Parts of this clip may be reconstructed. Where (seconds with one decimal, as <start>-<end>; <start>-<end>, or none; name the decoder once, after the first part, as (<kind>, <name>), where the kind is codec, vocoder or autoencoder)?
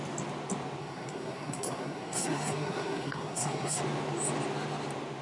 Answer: 0.8-3.8 (codec, SNAC)